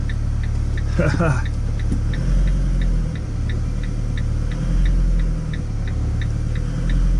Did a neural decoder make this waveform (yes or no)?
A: no